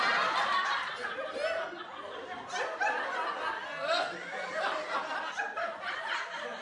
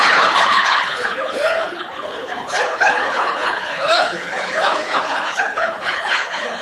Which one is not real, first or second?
second